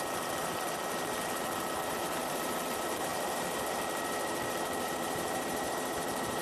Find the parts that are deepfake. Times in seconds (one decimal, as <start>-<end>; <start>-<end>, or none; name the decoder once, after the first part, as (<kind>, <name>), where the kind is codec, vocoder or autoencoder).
0.0-6.4 (vocoder, BigVGAN v2)